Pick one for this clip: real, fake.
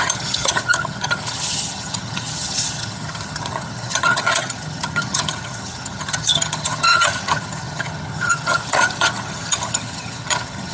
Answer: fake